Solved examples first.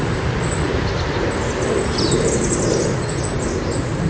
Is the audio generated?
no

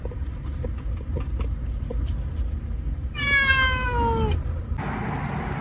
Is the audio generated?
no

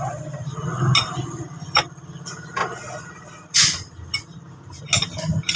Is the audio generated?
no